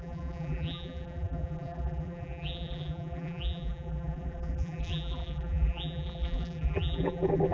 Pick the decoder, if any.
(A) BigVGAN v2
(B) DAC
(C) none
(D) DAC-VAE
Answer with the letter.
A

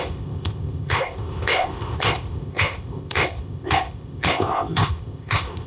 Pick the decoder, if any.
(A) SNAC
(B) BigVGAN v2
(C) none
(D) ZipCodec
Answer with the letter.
D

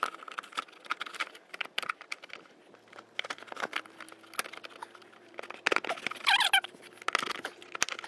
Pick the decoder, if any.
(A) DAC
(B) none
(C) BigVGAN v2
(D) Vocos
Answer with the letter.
B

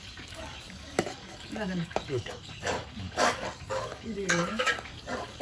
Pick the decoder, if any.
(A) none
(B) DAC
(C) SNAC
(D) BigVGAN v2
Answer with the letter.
B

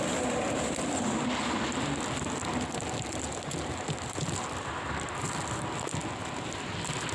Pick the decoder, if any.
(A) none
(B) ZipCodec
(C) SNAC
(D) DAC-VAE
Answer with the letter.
A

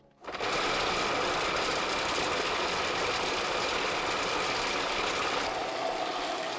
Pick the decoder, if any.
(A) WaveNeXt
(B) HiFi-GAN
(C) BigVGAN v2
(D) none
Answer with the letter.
D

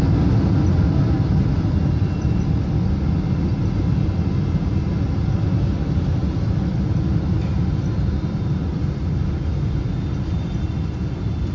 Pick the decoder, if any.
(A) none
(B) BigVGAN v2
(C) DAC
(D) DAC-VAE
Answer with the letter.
A